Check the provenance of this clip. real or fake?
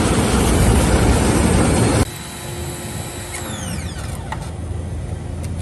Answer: real